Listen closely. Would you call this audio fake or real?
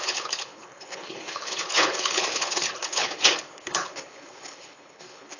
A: fake